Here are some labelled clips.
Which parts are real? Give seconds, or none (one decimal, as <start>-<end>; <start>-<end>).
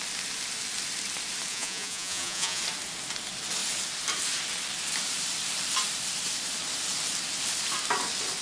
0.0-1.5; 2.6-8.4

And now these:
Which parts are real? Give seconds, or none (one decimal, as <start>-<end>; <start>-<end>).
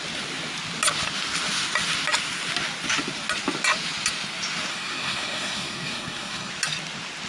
0.0-4.7; 6.5-7.3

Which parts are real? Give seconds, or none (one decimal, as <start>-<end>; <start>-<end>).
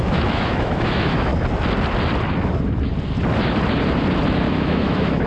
1.3-4.5